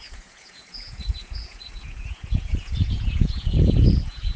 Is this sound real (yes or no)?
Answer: no